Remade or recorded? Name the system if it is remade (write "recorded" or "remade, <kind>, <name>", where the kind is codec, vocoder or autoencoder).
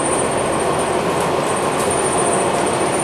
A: recorded